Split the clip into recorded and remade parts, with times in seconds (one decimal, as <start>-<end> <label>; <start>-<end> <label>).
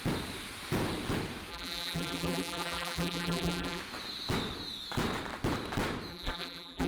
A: 0.0-1.5 recorded; 1.5-3.8 remade; 3.8-6.1 recorded; 6.1-6.9 remade